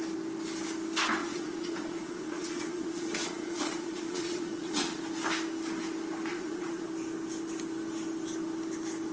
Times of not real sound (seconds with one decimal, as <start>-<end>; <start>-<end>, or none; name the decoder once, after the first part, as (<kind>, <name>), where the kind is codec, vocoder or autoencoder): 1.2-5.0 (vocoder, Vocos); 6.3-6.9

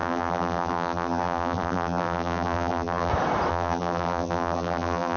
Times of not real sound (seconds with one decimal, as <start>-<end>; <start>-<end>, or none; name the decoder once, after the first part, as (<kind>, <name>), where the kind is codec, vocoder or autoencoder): 0.0-3.1 (vocoder, BigVGAN v2); 3.5-5.2

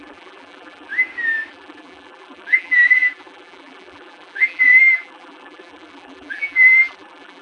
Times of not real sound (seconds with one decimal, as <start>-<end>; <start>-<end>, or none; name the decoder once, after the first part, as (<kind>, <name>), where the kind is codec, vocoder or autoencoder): 0.0-0.9 (vocoder, BigVGAN v2); 1.5-7.4

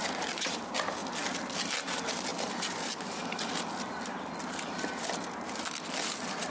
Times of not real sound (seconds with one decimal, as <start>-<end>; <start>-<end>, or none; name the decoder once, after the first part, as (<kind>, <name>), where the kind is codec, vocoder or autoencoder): none

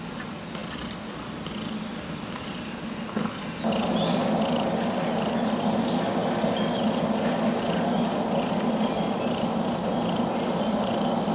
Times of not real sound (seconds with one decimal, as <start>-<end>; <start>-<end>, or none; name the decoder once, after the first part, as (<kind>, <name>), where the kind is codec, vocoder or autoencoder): none